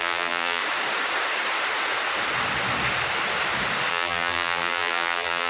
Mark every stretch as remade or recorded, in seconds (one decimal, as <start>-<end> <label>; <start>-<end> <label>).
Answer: 0.0-0.6 remade; 0.6-3.9 recorded; 3.9-5.5 remade